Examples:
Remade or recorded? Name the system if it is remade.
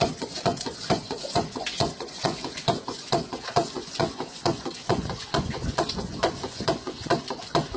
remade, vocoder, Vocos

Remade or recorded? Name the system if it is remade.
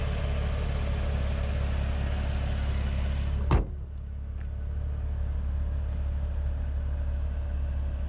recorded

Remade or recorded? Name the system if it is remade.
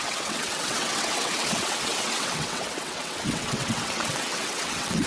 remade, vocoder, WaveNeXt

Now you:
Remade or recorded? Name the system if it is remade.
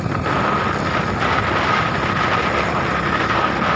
recorded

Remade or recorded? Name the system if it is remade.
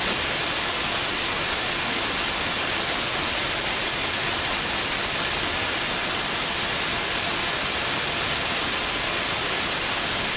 recorded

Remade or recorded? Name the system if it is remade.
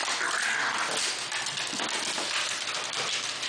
recorded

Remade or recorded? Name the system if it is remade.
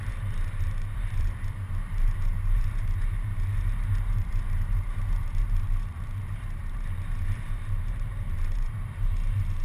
remade, vocoder, BigVGAN v2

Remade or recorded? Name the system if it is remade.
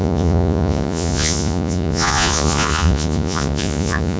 remade, vocoder, Vocos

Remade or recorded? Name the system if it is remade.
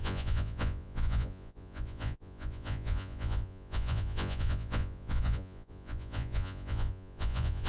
remade, vocoder, Vocos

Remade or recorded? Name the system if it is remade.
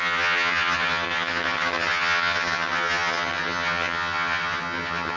remade, vocoder, HiFi-GAN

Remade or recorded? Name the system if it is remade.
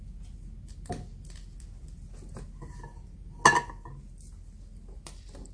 recorded